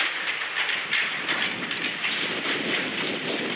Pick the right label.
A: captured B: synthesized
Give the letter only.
A